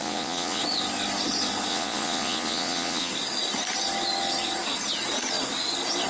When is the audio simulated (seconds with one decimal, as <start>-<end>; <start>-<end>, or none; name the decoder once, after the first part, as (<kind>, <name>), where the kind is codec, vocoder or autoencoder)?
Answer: 0.0-0.6 (vocoder, Vocos); 1.7-3.1